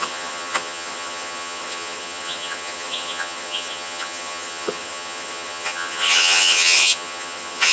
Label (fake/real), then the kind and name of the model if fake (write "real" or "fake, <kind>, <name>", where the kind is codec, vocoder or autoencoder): fake, vocoder, HiFi-GAN